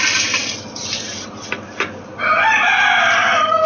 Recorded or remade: recorded